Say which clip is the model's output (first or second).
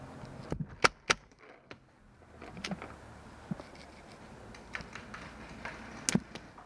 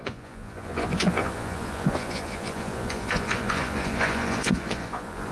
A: second